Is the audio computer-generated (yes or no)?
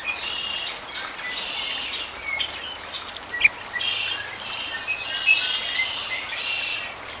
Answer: no